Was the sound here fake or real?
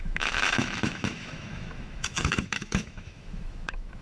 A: fake